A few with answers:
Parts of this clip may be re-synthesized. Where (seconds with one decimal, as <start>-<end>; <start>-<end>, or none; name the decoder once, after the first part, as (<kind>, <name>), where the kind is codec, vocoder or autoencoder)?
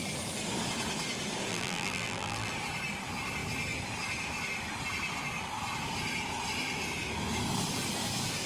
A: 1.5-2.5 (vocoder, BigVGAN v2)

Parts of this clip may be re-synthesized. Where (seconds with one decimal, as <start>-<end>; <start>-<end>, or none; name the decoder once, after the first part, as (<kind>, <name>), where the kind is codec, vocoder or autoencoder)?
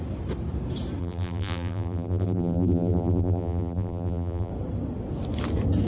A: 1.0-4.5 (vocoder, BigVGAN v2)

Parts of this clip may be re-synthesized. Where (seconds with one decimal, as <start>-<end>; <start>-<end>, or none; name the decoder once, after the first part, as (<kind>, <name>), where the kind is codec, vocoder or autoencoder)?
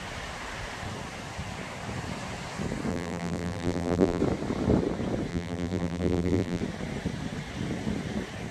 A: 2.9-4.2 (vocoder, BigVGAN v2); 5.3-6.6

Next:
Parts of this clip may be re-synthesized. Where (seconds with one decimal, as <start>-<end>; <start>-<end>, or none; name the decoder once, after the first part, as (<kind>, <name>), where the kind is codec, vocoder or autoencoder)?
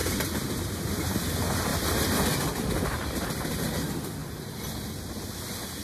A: 0.0-0.6 (vocoder, BigVGAN v2)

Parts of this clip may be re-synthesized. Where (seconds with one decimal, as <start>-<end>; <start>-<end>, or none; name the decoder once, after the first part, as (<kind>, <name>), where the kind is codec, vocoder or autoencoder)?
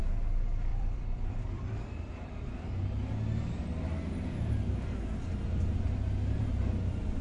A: 0.7-2.6 (vocoder, BigVGAN v2)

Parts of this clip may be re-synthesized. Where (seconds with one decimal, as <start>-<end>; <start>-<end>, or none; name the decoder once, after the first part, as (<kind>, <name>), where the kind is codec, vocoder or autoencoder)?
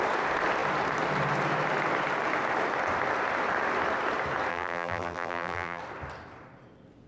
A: 4.5-5.8 (vocoder, BigVGAN v2)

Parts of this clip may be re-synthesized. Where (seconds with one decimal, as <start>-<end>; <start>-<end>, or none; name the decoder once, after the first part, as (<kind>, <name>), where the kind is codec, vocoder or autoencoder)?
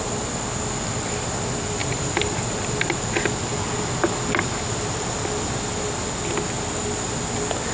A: 1.8-2.8 (vocoder, BigVGAN v2)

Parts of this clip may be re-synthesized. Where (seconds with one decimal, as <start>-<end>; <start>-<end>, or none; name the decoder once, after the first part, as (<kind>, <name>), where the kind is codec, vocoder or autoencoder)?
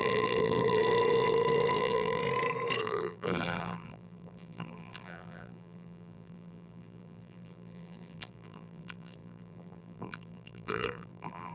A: 0.0-0.8 (vocoder, BigVGAN v2); 1.8-2.2; 2.8-11.5